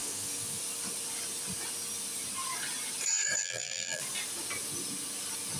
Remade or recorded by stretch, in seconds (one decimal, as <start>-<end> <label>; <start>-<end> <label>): 0.0-3.4 recorded; 3.4-4.0 remade; 4.0-5.6 recorded